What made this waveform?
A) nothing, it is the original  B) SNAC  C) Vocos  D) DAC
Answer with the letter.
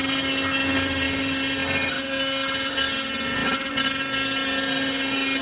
A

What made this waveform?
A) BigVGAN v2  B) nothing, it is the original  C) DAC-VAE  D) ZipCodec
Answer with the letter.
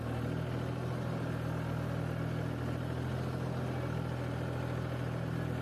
B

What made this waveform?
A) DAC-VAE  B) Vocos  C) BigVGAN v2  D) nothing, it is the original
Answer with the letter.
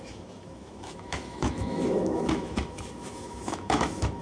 A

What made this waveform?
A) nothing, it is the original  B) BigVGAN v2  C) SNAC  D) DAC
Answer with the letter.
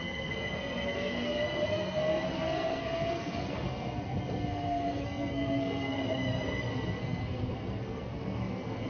C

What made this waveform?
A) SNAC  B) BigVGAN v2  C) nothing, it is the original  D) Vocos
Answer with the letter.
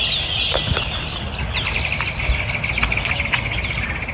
C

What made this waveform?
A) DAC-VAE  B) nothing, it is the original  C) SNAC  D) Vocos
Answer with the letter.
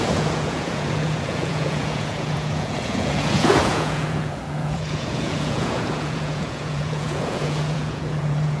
D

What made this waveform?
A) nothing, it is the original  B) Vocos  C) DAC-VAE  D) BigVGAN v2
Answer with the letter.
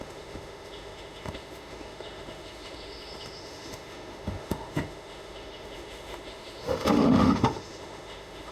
C